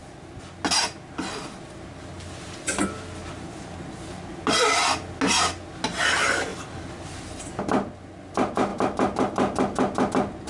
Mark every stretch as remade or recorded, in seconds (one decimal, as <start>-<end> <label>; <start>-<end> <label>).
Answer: 0.0-6.5 recorded; 6.5-7.2 remade; 7.2-10.5 recorded